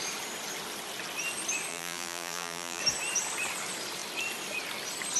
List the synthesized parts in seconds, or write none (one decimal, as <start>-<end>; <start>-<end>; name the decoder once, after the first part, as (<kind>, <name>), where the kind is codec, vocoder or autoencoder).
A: 1.7-2.8 (vocoder, BigVGAN v2)